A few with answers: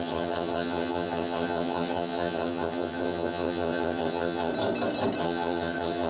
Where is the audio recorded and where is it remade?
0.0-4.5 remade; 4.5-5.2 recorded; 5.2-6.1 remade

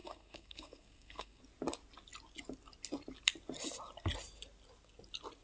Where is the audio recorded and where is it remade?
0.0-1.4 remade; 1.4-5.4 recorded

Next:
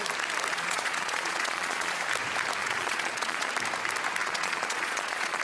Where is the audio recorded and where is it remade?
0.0-0.5 recorded; 0.5-2.0 remade; 2.0-2.6 recorded; 2.6-3.5 remade; 3.5-4.2 recorded; 4.2-5.4 remade

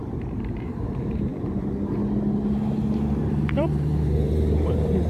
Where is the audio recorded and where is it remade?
0.0-1.3 remade; 1.3-3.2 recorded; 3.2-5.1 remade

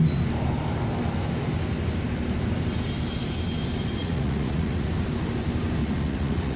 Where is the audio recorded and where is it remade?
0.0-4.0 recorded; 4.0-4.9 remade; 4.9-5.8 recorded; 5.8-6.6 remade

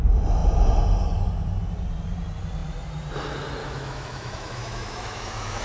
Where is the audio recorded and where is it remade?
0.0-3.6 recorded; 3.6-5.6 remade

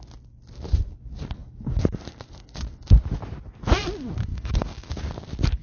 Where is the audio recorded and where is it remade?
0.0-4.3 recorded; 4.3-4.9 remade; 4.9-5.6 recorded

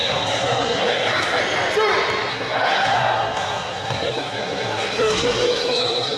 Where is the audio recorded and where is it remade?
0.0-1.4 remade; 1.4-2.3 recorded; 2.3-6.2 remade